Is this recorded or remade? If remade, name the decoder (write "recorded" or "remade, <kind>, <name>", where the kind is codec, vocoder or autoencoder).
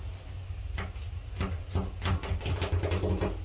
recorded